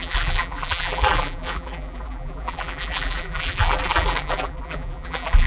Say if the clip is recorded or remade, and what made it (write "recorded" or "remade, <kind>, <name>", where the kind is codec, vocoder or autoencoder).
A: remade, vocoder, BigVGAN v2